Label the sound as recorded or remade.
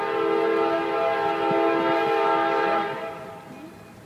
recorded